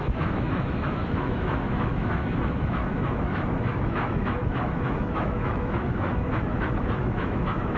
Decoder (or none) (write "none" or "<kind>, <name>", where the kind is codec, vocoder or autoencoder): autoencoder, DAC-VAE